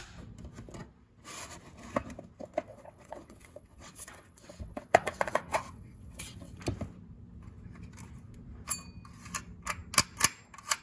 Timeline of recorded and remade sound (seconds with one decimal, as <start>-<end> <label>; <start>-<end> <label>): 0.0-2.7 recorded; 2.7-6.6 remade; 6.6-10.8 recorded